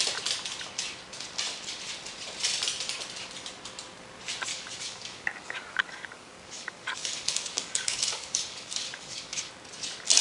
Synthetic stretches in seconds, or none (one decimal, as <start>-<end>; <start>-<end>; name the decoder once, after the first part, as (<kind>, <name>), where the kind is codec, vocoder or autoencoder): 4.5-9.5 (codec, DAC)